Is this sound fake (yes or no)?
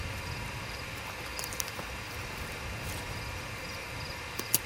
no